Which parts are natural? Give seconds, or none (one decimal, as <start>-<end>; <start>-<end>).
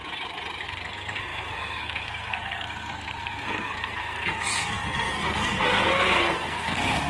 0.0-0.6